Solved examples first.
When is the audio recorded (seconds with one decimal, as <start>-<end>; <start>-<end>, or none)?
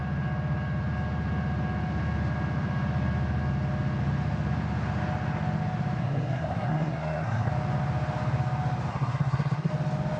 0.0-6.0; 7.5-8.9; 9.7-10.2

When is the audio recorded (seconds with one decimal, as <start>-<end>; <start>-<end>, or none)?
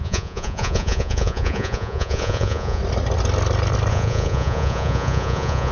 2.8-3.9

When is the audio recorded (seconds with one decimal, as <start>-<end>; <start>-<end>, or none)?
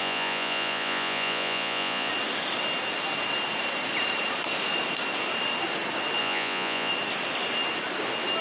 2.1-6.2; 6.9-8.4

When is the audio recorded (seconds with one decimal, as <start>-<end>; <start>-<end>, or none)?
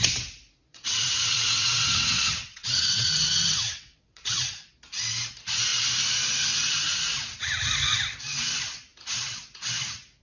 0.0-0.7; 4.5-10.2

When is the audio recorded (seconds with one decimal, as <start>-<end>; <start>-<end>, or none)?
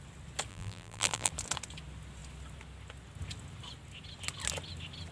0.0-0.5; 1.3-5.1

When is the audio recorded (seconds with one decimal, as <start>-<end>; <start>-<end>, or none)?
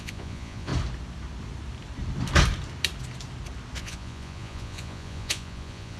0.7-3.8